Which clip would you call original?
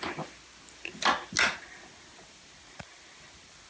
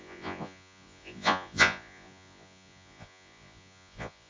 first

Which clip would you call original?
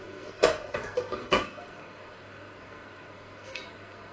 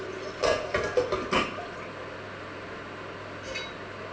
second